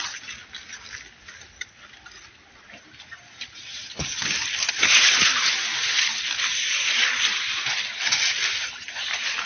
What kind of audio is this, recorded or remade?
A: recorded